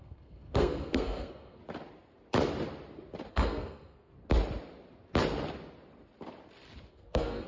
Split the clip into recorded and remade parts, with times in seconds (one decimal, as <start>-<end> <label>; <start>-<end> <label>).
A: 0.0-1.6 remade; 1.6-3.3 recorded; 3.3-4.1 remade; 4.1-6.9 recorded; 6.9-7.5 remade